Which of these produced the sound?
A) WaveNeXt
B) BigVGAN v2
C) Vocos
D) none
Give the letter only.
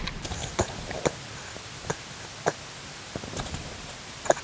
D